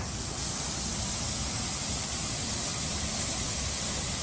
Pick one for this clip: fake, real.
real